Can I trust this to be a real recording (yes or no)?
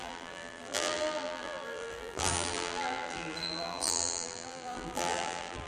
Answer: no